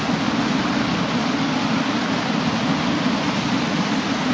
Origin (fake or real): real